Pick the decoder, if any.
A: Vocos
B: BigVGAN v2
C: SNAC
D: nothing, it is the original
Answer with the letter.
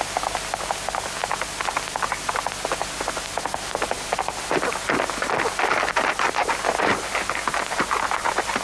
D